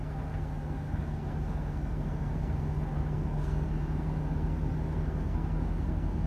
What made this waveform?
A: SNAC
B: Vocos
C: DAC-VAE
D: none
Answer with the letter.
A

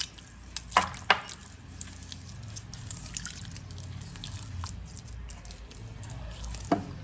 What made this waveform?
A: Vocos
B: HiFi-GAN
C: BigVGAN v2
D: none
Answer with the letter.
D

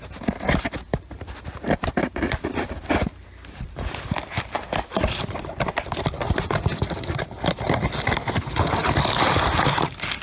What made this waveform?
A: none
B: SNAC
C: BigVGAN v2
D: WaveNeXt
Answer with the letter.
C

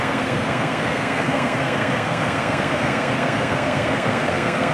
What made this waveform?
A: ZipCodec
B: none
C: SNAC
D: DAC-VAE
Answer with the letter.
C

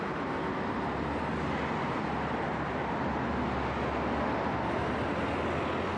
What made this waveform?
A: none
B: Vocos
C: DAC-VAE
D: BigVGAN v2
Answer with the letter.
A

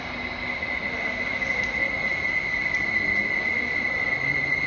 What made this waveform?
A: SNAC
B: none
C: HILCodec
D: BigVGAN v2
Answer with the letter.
B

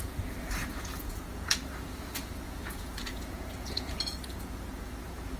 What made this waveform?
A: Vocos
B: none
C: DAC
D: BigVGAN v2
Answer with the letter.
A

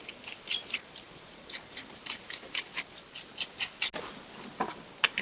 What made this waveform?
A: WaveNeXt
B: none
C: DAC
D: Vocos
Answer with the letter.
B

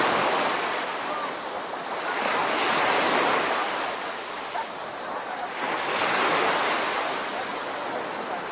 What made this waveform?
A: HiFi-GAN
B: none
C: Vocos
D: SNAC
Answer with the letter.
B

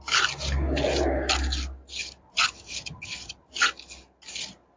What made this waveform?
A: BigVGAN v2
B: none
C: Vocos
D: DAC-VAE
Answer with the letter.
B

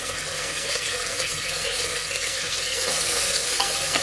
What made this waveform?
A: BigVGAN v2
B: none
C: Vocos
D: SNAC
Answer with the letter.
D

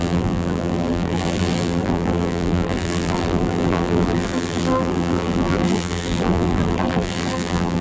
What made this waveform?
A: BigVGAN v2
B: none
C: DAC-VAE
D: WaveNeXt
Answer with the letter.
A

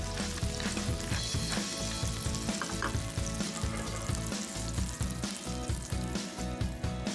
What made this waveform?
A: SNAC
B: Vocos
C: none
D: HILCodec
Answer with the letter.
C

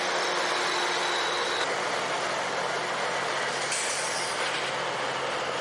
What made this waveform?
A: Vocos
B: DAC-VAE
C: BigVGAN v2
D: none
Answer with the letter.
D